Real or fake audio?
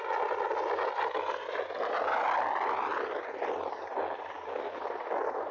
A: real